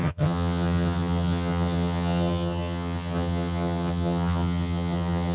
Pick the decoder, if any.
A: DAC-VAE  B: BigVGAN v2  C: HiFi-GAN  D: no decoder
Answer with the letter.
C